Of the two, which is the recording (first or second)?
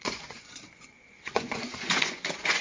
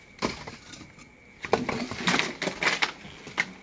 second